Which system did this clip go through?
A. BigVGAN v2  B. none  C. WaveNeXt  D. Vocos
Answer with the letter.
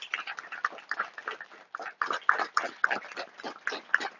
B